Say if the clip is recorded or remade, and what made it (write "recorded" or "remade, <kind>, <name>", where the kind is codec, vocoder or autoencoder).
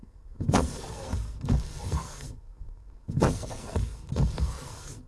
remade, codec, SNAC